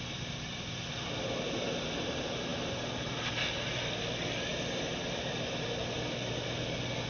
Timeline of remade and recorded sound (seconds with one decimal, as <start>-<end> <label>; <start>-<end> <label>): 0.0-7.1 recorded